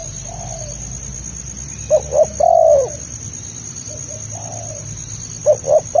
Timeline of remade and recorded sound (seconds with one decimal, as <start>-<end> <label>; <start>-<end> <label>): 0.0-6.0 recorded